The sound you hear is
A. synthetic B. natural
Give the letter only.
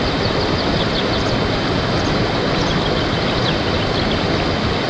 B